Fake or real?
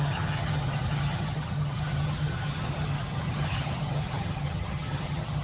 fake